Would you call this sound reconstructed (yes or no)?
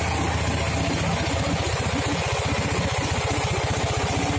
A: no